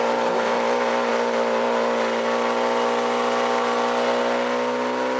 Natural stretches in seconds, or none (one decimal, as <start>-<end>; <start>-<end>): 0.0-5.2